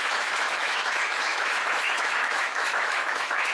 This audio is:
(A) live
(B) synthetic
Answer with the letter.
B